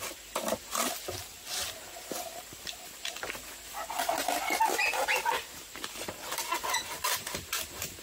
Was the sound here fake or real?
real